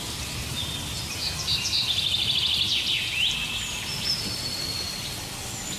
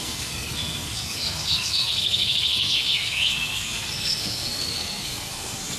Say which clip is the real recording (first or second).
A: first